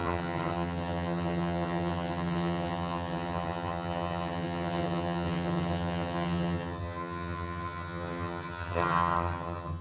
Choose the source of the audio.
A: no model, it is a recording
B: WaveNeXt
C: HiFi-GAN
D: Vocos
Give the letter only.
C